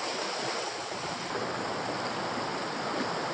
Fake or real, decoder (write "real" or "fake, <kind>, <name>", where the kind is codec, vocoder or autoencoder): real